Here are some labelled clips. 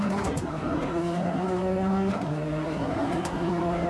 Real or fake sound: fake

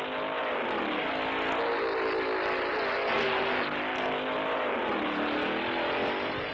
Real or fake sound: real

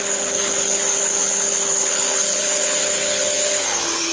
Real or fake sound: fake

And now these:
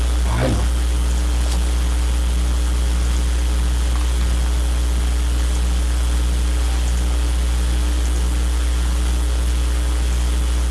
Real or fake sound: real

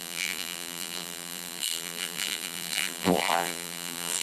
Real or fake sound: fake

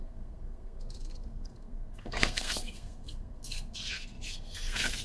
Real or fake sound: fake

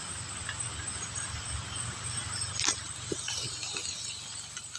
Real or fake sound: real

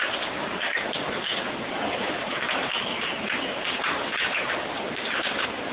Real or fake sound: real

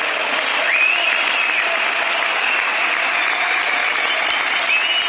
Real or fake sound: real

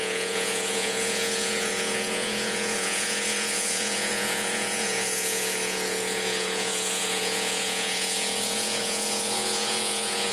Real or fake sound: fake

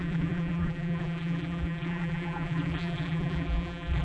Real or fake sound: fake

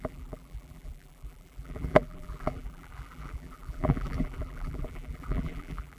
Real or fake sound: fake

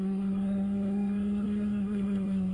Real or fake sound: fake